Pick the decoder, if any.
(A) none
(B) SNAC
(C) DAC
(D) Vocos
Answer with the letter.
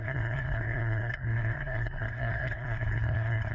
B